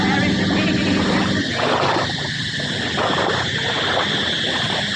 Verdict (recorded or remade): recorded